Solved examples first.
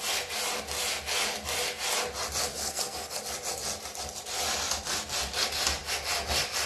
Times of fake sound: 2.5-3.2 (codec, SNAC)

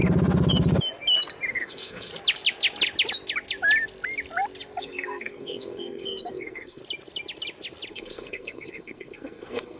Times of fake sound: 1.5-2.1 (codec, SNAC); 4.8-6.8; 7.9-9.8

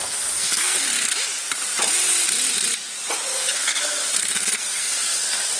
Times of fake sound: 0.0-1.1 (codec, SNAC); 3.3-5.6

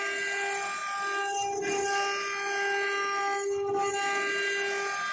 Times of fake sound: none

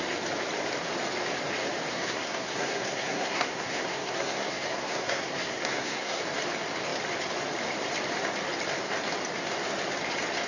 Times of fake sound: 1.9-6.2 (codec, SNAC)

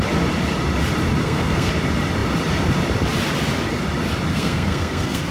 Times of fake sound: 1.2-1.7 (codec, SNAC); 4.3-5.3

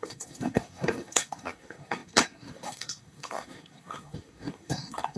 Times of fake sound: 0.0-5.2 (codec, SNAC)

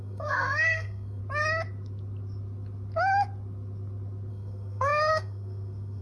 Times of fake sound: 0.0-1.2 (codec, SNAC); 4.3-6.0